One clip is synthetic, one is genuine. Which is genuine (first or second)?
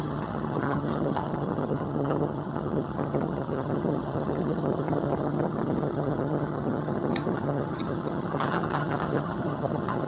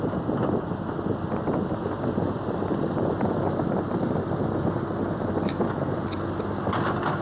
second